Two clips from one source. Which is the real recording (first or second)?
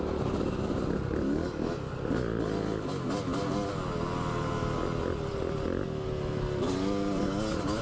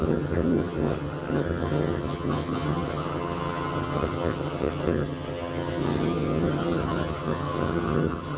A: first